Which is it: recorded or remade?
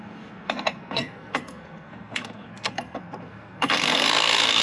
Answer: remade